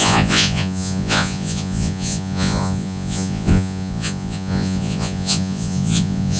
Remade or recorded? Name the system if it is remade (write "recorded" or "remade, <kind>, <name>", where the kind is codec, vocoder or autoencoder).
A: remade, vocoder, Vocos